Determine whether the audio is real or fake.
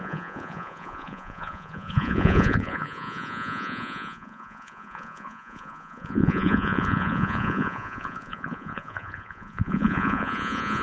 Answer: fake